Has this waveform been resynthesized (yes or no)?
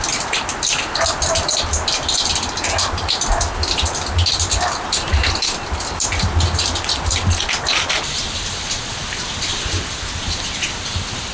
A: no